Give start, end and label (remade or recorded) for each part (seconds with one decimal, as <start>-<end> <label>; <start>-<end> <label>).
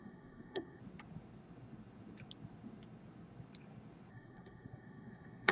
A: 0.0-0.8 remade; 0.8-4.1 recorded; 4.1-5.5 remade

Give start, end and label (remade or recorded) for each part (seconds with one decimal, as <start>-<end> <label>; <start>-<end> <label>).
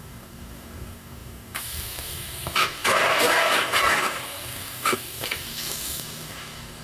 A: 0.0-6.8 remade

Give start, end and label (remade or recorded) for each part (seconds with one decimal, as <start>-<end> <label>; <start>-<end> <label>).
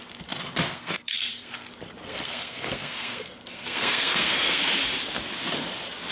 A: 0.0-0.7 recorded; 0.7-1.5 remade; 1.5-2.0 recorded; 2.0-4.7 remade; 4.7-6.1 recorded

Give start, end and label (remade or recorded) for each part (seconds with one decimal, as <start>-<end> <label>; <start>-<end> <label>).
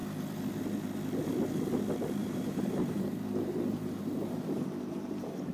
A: 0.0-2.2 recorded; 2.2-5.5 remade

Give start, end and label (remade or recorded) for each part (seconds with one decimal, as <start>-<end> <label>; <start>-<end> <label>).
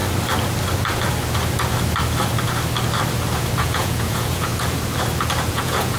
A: 0.0-3.6 recorded; 3.6-4.5 remade; 4.5-5.5 recorded; 5.5-6.0 remade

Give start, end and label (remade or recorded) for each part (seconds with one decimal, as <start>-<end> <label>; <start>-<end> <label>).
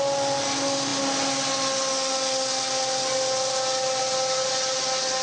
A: 0.0-5.2 recorded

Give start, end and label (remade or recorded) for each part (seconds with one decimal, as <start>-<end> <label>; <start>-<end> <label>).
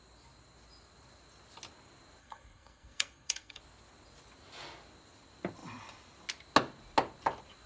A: 0.0-2.2 recorded; 2.2-3.6 remade; 3.6-7.7 recorded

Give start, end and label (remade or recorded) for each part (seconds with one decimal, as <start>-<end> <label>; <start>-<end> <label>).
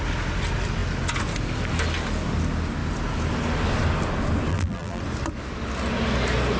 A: 0.0-4.5 recorded; 4.5-5.0 remade; 5.0-6.6 recorded